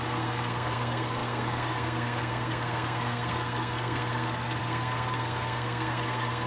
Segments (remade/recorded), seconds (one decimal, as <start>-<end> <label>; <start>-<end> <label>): 0.0-6.5 remade